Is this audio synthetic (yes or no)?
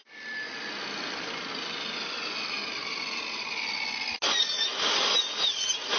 no